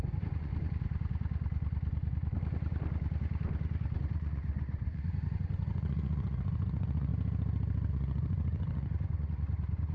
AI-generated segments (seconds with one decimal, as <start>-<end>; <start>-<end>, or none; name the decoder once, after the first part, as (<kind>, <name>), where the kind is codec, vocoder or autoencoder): 0.0-0.5 (vocoder, Vocos); 4.0-7.1; 7.9-9.9